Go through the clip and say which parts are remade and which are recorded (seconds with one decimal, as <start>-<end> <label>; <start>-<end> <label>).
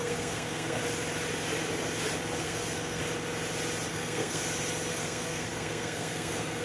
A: 0.0-0.8 remade; 0.8-2.4 recorded; 2.4-3.0 remade; 3.0-3.9 recorded; 3.9-4.4 remade; 4.4-4.9 recorded; 4.9-6.6 remade